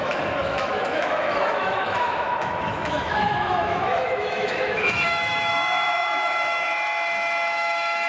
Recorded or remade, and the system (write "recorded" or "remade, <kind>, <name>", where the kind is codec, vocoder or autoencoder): remade, autoencoder, DAC-VAE